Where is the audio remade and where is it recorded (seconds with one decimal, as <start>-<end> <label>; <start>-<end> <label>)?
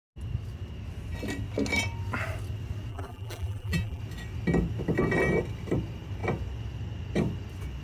0.0-2.9 recorded; 2.9-4.0 remade; 4.0-7.8 recorded